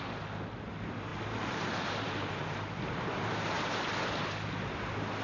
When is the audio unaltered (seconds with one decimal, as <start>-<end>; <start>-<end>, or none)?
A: 0.0-1.1; 4.2-5.2